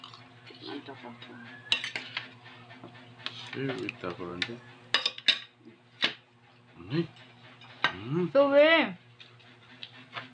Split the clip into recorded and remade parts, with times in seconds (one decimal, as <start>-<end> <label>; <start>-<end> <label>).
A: 0.0-10.3 recorded